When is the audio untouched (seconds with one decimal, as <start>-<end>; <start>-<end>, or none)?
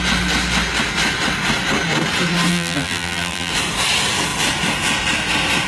0.0-2.5; 3.5-5.7